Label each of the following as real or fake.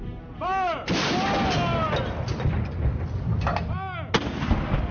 real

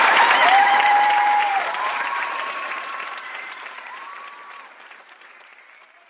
fake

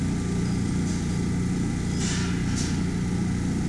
real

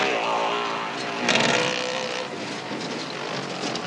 real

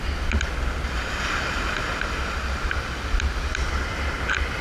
real